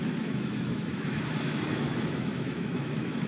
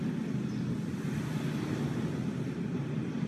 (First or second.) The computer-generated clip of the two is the first